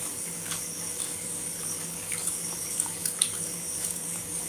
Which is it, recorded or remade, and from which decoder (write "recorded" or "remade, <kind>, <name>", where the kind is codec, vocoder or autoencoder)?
remade, codec, DAC